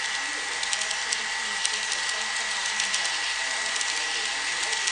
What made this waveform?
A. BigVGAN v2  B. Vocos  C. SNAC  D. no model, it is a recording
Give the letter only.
D